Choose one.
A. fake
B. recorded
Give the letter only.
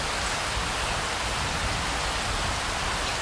B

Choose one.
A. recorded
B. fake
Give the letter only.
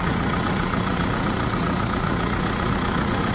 B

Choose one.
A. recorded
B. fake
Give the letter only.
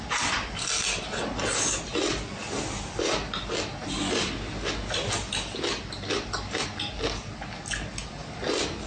A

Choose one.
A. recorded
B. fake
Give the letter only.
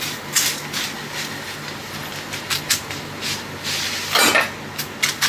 A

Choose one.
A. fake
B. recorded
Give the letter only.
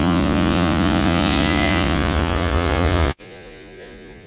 A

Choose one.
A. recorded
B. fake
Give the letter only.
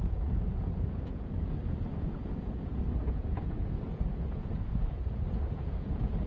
B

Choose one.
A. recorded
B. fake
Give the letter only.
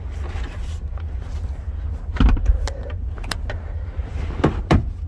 A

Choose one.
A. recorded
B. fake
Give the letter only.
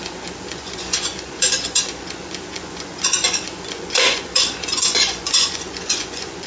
B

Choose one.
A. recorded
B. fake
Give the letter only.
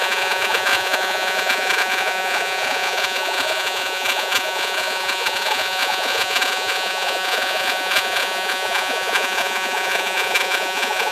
B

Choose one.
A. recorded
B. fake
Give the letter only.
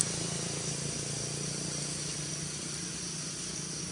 A